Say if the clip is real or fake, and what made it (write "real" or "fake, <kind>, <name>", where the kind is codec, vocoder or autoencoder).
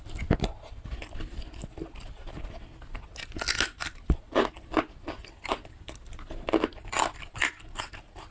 real